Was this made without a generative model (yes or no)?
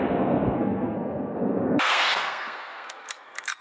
no